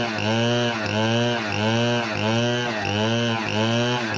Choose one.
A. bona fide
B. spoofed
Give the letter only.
A